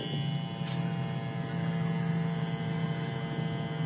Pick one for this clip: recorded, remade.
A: recorded